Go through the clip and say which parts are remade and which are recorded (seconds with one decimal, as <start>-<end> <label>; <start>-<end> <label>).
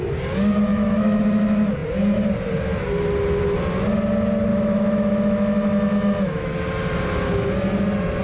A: 0.0-0.7 recorded; 0.7-1.2 remade; 1.2-4.5 recorded; 4.5-6.6 remade; 6.6-8.2 recorded